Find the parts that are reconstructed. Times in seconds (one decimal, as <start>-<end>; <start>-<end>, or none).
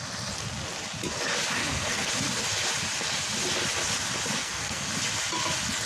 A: 1.6-2.1; 4.4-4.9